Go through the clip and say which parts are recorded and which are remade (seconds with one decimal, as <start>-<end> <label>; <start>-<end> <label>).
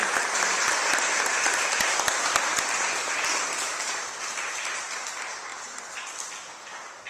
0.0-4.2 remade; 4.2-7.1 recorded